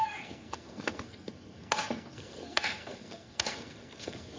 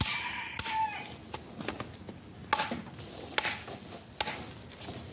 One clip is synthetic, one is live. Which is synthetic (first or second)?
first